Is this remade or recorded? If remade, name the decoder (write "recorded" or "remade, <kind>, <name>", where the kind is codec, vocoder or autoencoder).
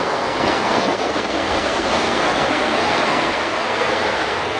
remade, codec, SNAC